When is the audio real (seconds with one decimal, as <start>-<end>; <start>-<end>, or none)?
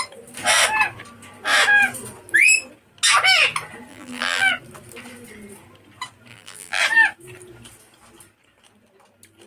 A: 0.0-3.9; 4.5-6.3; 6.8-9.5